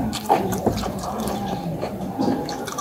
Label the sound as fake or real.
fake